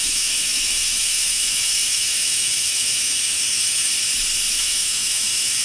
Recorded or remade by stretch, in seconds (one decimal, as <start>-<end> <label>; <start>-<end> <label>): 0.0-3.9 remade; 3.9-4.5 recorded; 4.5-5.6 remade